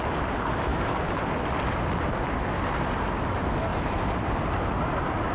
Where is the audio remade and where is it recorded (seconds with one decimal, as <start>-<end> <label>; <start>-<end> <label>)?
0.0-0.7 recorded; 0.7-1.3 remade; 1.3-3.7 recorded; 3.7-5.3 remade